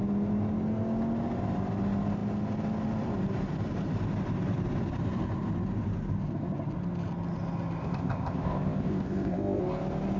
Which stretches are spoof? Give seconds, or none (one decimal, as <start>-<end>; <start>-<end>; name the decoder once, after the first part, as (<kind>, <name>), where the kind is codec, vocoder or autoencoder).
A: 7.8-9.6 (codec, ZipCodec)